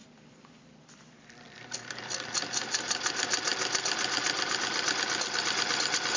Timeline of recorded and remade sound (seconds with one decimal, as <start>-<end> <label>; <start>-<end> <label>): 0.0-3.1 remade; 3.1-6.2 recorded